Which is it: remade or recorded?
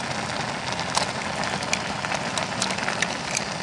recorded